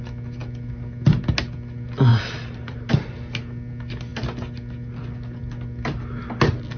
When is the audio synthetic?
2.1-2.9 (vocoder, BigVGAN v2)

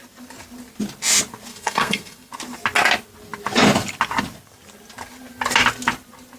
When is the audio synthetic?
1.5-2.3 (codec, SNAC)

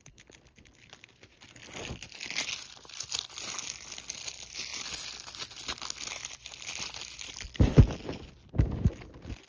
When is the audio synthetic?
none

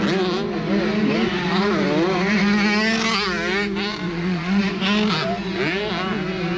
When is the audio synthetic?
4.1-4.6 (vocoder, Vocos)